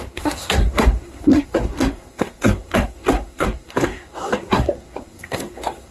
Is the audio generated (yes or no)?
yes